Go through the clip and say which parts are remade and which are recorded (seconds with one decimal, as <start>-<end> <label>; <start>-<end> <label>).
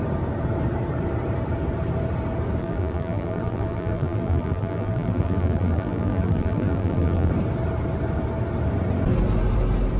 0.0-2.6 recorded; 2.6-7.3 remade; 7.3-10.0 recorded